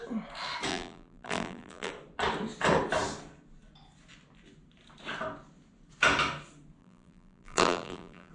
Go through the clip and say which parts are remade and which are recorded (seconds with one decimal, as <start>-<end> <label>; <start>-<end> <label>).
0.0-0.7 recorded; 0.7-1.9 remade; 1.9-6.8 recorded; 6.8-8.3 remade